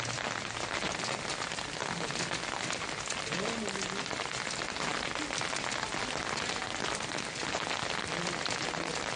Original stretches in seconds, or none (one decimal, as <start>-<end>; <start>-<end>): 0.0-9.2